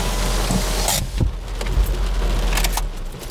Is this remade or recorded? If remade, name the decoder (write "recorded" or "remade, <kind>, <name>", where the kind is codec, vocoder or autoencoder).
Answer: recorded